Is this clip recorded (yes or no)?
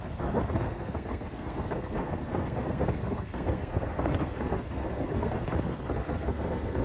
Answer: no